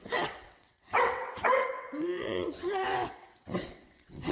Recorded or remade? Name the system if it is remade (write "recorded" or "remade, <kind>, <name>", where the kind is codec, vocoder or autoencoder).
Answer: remade, vocoder, WaveNeXt